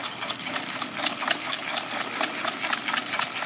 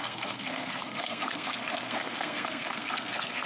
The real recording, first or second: first